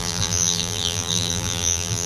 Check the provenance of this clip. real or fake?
fake